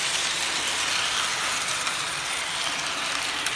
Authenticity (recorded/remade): recorded